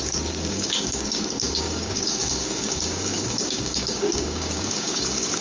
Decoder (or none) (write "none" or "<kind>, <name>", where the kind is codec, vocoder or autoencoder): codec, DAC